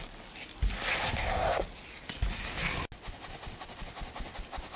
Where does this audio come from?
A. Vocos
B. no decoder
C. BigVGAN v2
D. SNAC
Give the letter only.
B